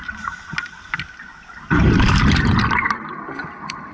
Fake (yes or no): no